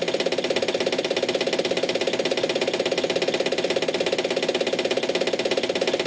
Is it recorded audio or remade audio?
recorded